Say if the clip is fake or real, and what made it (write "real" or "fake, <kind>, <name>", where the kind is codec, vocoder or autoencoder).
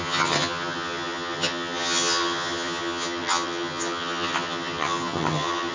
fake, vocoder, HiFi-GAN